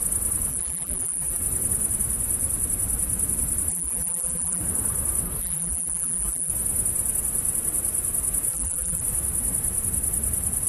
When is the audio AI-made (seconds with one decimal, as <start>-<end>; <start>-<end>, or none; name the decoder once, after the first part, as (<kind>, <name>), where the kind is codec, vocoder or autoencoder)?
0.5-1.4 (vocoder, BigVGAN v2); 3.7-4.6; 5.4-6.5; 8.5-9.0